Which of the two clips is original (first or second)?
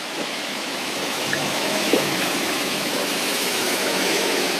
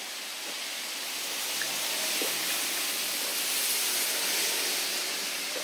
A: second